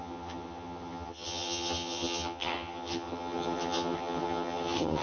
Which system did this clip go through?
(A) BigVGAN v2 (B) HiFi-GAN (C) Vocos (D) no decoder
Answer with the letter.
B